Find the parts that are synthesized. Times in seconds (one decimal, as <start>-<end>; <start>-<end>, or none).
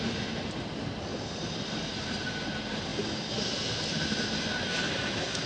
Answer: 1.1-2.4